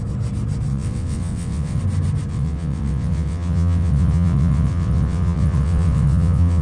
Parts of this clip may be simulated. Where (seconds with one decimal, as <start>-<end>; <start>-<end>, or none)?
0.7-1.8; 2.3-6.6

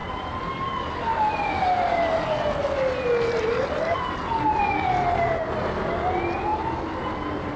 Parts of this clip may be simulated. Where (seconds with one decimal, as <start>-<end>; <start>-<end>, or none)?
none

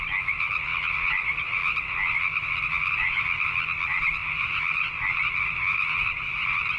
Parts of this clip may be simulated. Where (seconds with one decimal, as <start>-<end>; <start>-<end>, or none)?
none